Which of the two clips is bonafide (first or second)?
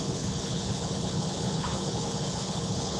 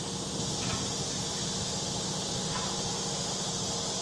second